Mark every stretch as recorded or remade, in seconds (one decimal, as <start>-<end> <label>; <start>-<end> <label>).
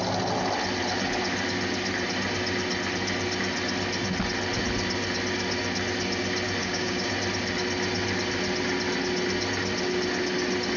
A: 0.0-6.6 recorded; 6.6-7.1 remade; 7.1-10.8 recorded